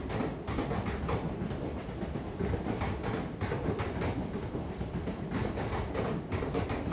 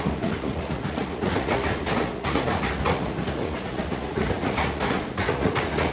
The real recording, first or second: first